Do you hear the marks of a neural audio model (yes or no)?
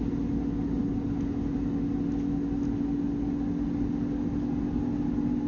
no